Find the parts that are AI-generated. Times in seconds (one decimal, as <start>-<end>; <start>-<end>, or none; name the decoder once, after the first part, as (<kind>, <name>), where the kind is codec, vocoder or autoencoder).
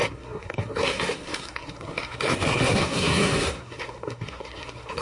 0.0-5.0 (codec, SNAC)